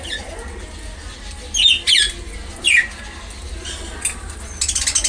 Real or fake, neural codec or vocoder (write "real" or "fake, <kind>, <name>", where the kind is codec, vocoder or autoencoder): real